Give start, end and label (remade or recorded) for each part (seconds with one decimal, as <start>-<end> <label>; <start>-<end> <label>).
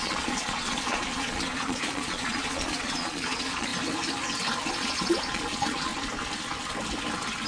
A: 0.0-3.7 remade; 3.7-4.7 recorded; 4.7-5.9 remade; 5.9-7.5 recorded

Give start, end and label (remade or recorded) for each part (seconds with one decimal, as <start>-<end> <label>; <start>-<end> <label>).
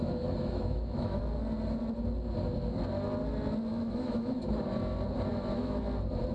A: 0.0-1.2 remade; 1.2-3.7 recorded; 3.7-4.6 remade; 4.6-5.3 recorded; 5.3-5.8 remade; 5.8-6.3 recorded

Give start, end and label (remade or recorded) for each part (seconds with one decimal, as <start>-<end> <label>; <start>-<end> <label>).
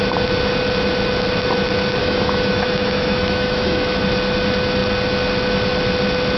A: 0.0-2.0 recorded; 2.0-4.0 remade; 4.0-6.4 recorded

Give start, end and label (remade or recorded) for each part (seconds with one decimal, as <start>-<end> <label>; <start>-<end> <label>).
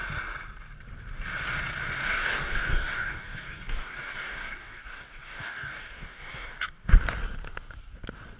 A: 0.0-2.0 recorded; 2.0-6.9 remade; 6.9-8.4 recorded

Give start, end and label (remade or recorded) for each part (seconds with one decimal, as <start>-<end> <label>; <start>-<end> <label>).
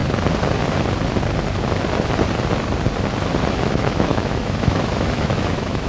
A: 0.0-3.5 recorded; 3.5-5.9 remade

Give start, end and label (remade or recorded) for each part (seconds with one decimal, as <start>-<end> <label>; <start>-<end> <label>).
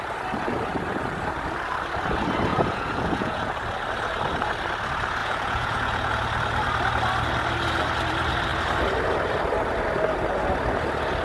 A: 0.0-2.5 recorded; 2.5-3.5 remade; 3.5-5.2 recorded; 5.2-6.1 remade; 6.1-11.2 recorded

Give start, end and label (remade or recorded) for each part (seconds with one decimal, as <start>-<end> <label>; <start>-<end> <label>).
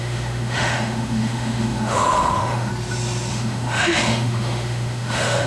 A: 0.0-2.7 remade; 2.7-3.3 recorded; 3.3-5.5 remade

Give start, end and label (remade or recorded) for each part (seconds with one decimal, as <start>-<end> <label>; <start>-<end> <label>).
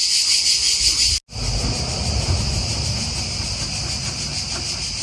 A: 0.0-1.1 remade; 1.1-5.0 recorded